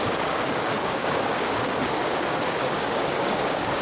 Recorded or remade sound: remade